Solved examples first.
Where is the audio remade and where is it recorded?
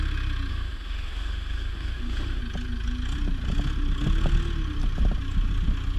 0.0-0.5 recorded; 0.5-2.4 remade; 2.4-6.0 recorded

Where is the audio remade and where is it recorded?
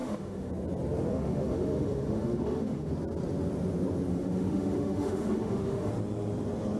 0.0-0.5 remade; 0.5-1.1 recorded; 1.1-2.9 remade; 2.9-4.1 recorded; 4.1-5.9 remade; 5.9-6.8 recorded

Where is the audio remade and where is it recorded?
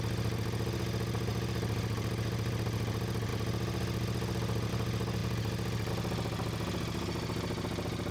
0.0-1.3 recorded; 1.3-2.5 remade; 2.5-3.3 recorded; 3.3-4.7 remade; 4.7-5.2 recorded; 5.2-5.9 remade; 5.9-8.1 recorded